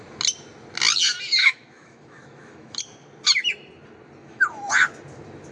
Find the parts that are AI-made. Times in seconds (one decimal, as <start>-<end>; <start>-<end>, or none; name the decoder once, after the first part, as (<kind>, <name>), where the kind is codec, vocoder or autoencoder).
1.4-2.8 (autoencoder, DAC-VAE); 4.2-4.7